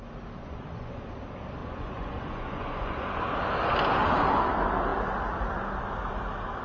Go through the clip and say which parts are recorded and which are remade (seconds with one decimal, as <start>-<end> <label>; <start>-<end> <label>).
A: 0.0-0.4 recorded; 0.4-1.0 remade; 1.0-1.6 recorded; 1.6-3.2 remade; 3.2-6.6 recorded